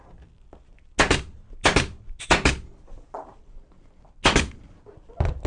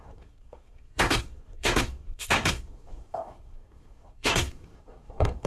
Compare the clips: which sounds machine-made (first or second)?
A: second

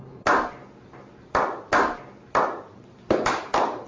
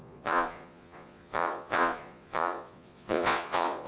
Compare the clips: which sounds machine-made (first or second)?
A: second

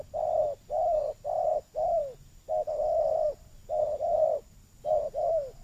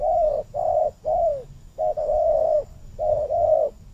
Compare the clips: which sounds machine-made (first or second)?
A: second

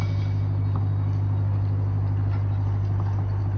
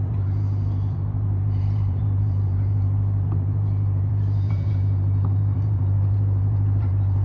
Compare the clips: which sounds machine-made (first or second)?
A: second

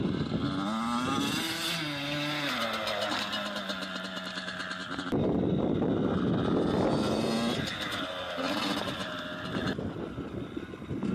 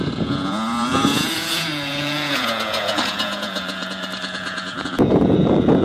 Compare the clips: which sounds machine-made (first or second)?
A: second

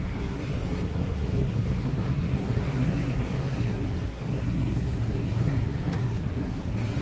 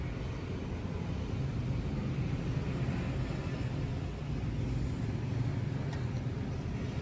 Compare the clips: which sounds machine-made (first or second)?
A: first